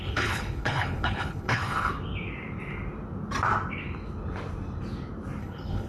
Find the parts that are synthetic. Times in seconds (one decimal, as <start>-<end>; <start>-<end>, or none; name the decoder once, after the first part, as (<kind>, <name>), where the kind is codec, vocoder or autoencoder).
0.0-1.9 (codec, HILCodec); 5.4-5.9